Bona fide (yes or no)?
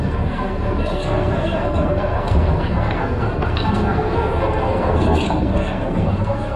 no